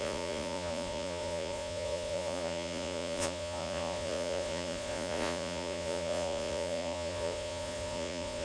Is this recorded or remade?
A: remade